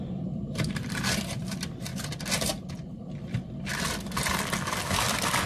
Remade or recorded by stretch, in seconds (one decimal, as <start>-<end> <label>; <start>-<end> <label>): 0.0-5.5 recorded